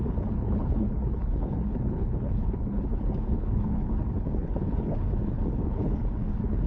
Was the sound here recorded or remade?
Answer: remade